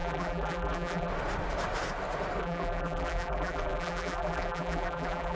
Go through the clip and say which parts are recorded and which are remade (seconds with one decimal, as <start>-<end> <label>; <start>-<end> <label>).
0.0-1.1 remade; 1.1-2.4 recorded; 2.4-5.4 remade